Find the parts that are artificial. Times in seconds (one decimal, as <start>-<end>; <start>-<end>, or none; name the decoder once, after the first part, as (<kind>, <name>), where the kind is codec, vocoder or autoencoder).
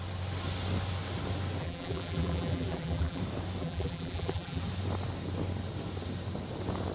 1.6-3.2 (vocoder, BigVGAN v2); 3.6-4.6